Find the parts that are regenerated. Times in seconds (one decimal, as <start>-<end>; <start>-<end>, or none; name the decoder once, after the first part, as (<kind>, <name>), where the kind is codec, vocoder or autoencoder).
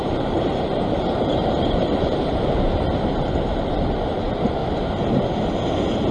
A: 0.0-4.6 (vocoder, BigVGAN v2)